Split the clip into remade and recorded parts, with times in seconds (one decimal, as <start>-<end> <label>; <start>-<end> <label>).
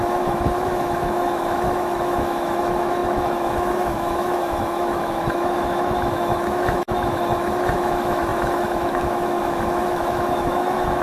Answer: 0.0-11.0 remade